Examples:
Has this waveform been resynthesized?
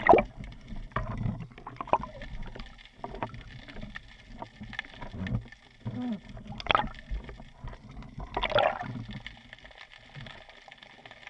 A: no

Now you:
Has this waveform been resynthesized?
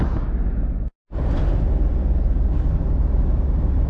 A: no